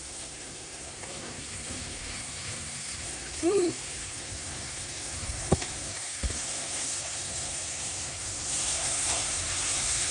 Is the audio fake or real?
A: fake